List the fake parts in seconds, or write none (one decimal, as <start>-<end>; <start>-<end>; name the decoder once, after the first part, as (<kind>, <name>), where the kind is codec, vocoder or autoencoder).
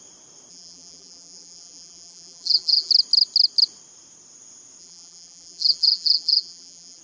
0.5-2.9 (vocoder, BigVGAN v2); 4.8-7.0